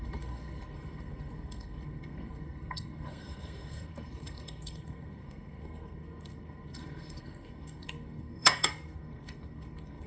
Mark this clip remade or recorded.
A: remade